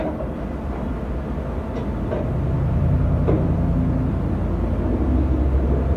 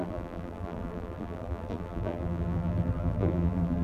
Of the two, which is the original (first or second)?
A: first